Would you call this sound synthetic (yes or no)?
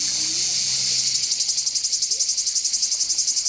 no